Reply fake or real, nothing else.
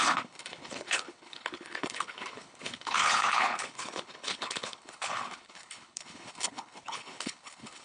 fake